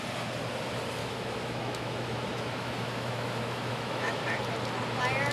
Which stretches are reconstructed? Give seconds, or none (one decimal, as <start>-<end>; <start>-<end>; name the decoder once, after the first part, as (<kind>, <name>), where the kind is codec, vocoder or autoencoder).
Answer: 1.0-4.2 (autoencoder, DAC-VAE)